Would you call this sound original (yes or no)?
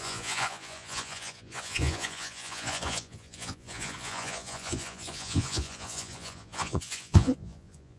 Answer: no